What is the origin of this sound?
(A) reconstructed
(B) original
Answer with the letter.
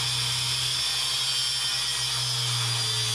B